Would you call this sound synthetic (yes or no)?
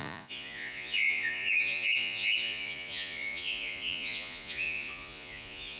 yes